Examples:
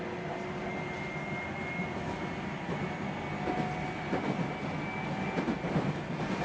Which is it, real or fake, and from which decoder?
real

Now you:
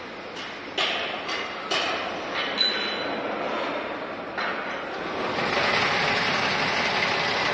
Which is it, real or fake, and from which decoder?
real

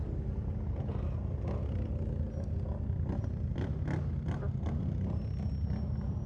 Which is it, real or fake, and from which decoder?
real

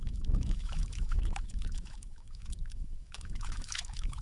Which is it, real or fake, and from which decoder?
fake, autoencoder, DAC-VAE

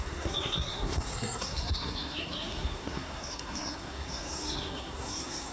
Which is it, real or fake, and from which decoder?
fake, codec, SNAC